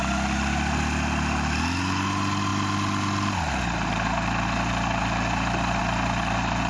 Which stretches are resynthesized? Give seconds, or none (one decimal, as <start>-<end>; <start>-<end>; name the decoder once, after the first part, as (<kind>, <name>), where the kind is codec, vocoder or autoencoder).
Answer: none